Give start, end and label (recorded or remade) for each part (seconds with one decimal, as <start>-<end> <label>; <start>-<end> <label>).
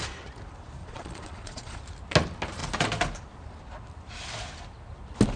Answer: 0.0-0.8 recorded; 0.8-1.8 remade; 1.8-5.4 recorded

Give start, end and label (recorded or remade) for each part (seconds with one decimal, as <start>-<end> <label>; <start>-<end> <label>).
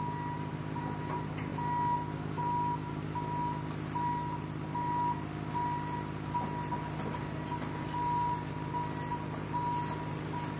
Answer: 0.0-10.6 recorded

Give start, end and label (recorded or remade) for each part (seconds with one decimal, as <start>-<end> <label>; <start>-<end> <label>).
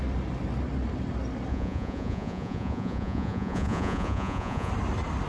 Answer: 0.0-1.5 recorded; 1.5-4.7 remade; 4.7-5.3 recorded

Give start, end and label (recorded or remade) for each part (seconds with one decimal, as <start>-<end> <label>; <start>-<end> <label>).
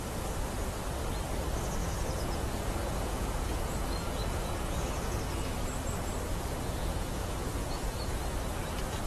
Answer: 0.0-1.8 recorded; 1.8-5.2 remade; 5.2-6.3 recorded; 6.3-8.2 remade; 8.2-9.1 recorded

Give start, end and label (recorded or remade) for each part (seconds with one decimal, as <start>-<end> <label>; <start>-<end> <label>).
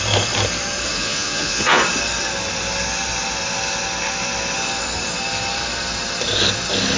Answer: 0.0-0.9 recorded; 0.9-1.8 remade; 1.8-7.0 recorded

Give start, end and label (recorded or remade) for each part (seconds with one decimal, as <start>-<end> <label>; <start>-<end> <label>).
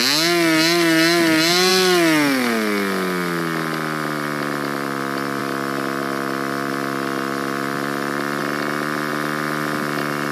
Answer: 0.0-10.3 recorded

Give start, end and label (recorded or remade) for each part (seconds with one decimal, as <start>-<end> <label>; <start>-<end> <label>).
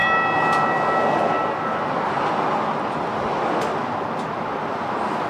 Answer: 0.0-5.3 recorded